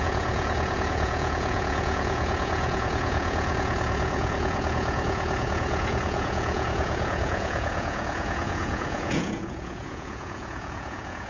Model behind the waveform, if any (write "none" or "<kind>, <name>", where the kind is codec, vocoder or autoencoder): vocoder, Vocos